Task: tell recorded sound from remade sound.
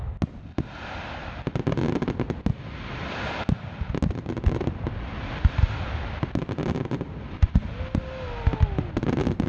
recorded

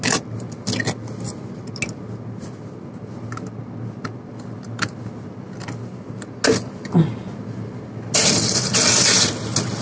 recorded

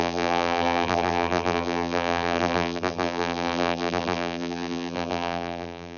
remade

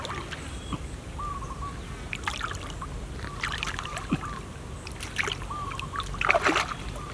recorded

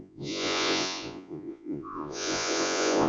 remade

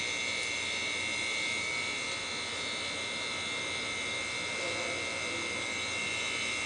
recorded